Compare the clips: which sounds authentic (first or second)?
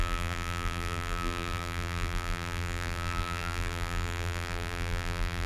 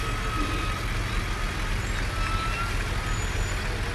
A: second